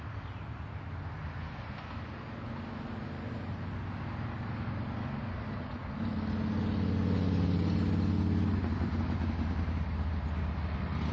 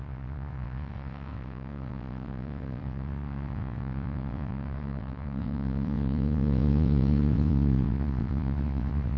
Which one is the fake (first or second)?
second